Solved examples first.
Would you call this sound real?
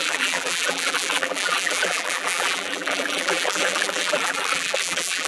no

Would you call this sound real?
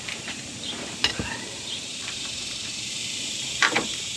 no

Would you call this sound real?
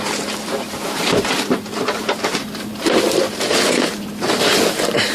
no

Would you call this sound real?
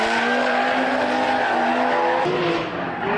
yes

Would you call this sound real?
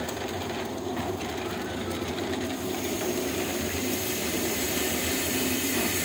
no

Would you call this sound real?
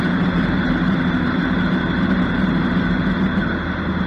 no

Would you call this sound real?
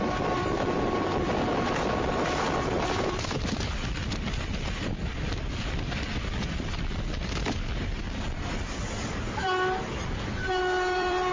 no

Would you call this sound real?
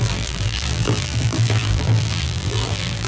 no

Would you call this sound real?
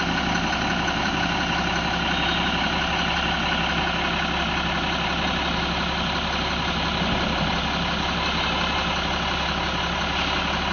yes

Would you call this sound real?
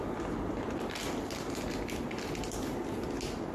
yes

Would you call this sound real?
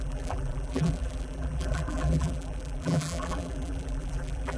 no